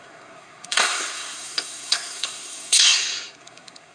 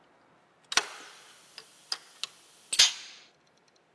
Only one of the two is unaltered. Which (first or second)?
second